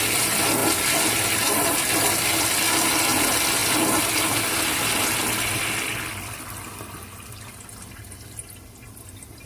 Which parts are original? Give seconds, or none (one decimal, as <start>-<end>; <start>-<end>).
0.0-9.5